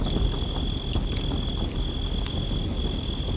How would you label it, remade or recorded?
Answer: recorded